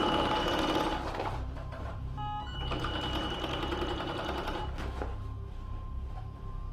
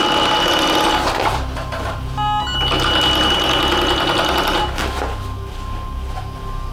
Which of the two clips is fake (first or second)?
first